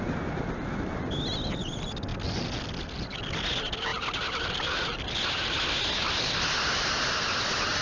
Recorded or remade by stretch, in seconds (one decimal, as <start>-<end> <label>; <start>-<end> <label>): 0.0-7.8 recorded